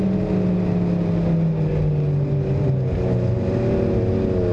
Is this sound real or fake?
real